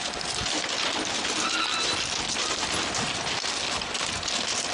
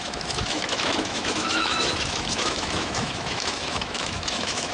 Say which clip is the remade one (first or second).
second